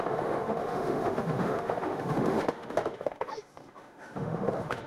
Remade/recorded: remade